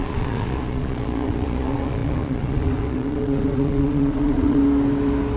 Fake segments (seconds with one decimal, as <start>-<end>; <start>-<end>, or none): 0.0-4.6